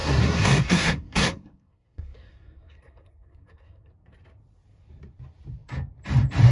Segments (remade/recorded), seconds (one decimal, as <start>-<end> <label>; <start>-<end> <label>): 0.0-3.9 remade; 3.9-6.5 recorded

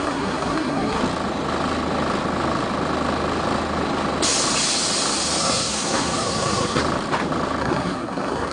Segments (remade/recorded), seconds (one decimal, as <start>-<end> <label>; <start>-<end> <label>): 0.0-1.0 remade; 1.0-5.4 recorded; 5.4-6.8 remade; 6.8-7.6 recorded; 7.6-8.5 remade

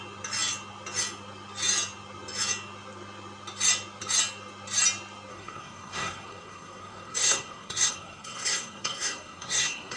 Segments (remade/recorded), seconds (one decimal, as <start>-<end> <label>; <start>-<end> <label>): 0.0-5.3 recorded; 5.3-10.0 remade

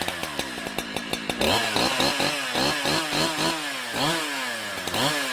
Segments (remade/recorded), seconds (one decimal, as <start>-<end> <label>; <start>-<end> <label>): 0.0-5.3 recorded